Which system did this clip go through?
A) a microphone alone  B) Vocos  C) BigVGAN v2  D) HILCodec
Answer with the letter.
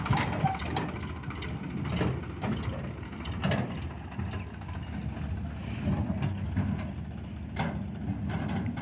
A